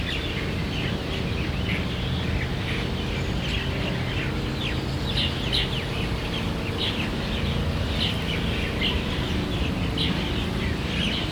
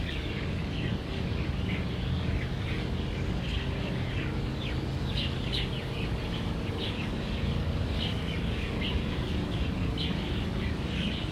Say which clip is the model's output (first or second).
second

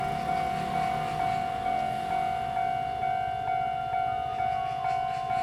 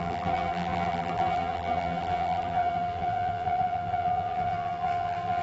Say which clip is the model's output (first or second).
second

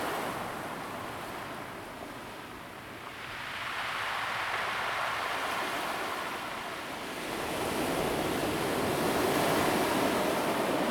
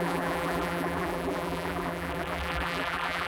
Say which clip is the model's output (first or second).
second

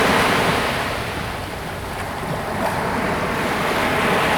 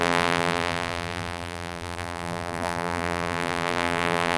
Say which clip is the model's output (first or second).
second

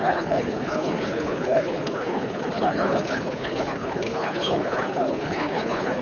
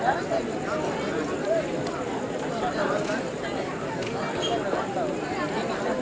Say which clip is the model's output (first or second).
first